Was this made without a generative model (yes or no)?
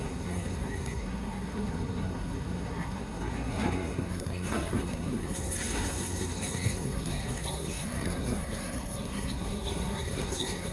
no